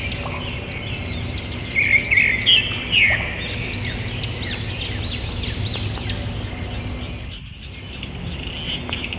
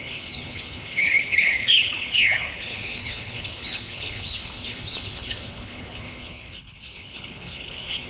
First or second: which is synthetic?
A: second